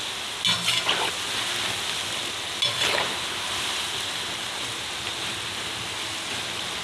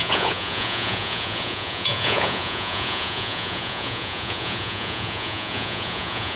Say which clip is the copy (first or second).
second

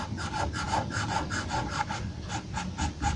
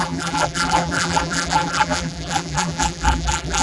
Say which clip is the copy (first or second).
second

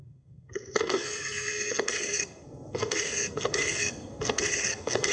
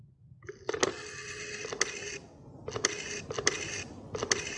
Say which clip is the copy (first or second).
first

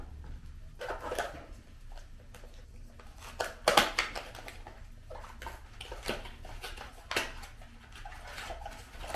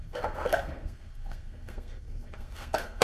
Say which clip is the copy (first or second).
second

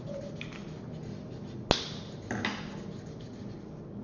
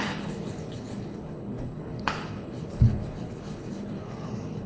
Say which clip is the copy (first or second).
second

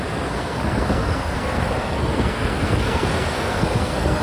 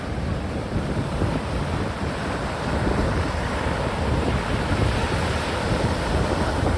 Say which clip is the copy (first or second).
first